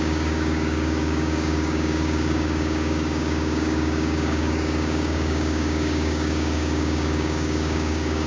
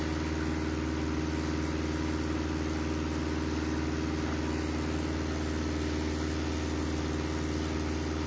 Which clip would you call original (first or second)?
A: second